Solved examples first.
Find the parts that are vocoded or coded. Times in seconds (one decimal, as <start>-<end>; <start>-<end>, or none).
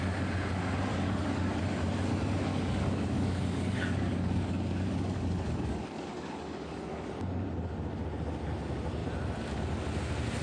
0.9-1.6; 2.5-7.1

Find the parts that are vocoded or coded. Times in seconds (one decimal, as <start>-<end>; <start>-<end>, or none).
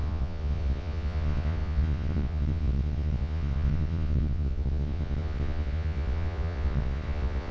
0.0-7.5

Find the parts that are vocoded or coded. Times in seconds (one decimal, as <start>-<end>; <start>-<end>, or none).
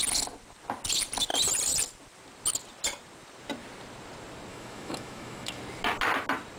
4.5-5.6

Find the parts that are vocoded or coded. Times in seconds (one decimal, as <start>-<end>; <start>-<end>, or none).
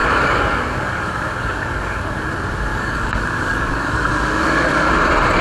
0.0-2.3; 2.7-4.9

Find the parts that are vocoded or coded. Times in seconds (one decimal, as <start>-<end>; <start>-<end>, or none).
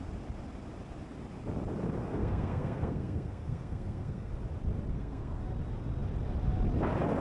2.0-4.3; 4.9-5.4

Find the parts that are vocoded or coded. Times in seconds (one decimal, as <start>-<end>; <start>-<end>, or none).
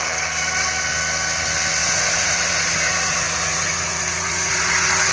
1.8-5.1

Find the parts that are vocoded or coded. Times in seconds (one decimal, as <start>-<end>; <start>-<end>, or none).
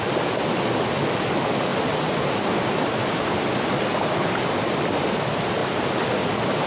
none